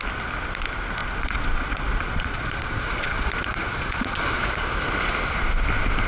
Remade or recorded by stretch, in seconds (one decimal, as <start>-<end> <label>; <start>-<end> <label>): 0.0-1.0 recorded; 1.0-4.7 remade; 4.7-6.1 recorded